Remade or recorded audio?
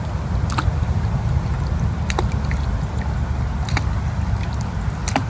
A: recorded